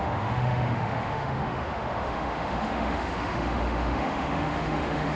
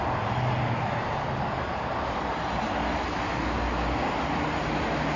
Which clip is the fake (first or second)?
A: first